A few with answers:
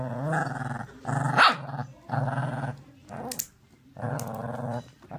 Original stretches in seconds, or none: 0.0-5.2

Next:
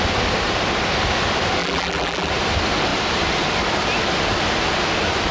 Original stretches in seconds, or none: 0.0-1.6; 2.3-5.3

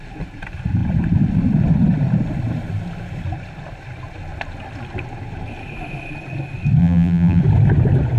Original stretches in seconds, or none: 0.0-6.8; 7.4-8.2

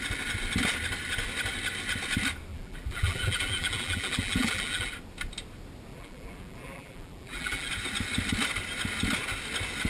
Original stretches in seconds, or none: 0.0-2.5; 4.9-5.9; 7.7-9.9

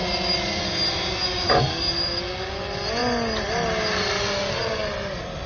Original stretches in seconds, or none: 3.0-3.9

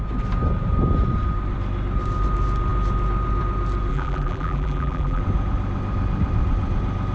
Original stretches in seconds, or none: 0.0-3.9; 5.2-7.1